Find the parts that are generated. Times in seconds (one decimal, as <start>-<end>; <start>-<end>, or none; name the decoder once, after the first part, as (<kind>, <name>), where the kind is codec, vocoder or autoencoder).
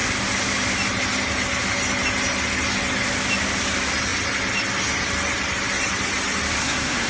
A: 6.6-7.1 (codec, SNAC)